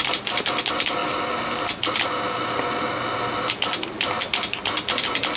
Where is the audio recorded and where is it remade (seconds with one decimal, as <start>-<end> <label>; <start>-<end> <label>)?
0.0-5.4 recorded